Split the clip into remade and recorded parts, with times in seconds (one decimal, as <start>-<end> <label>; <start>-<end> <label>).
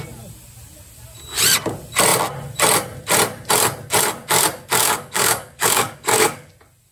0.0-4.8 recorded; 4.8-6.5 remade; 6.5-6.9 recorded